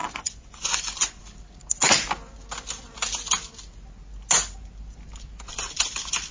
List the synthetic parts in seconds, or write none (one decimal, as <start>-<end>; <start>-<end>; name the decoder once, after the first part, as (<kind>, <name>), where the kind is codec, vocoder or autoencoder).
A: 0.0-1.2 (vocoder, Vocos)